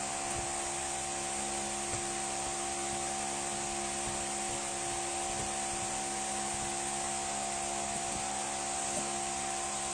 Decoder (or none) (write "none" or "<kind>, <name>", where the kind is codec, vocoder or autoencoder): none